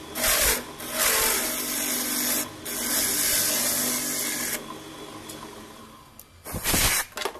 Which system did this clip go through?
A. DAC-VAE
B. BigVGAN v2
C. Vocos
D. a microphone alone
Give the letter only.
D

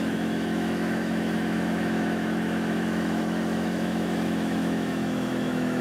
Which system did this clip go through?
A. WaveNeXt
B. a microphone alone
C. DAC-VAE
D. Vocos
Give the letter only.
C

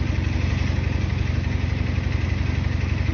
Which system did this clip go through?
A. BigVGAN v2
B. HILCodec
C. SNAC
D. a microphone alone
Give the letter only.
D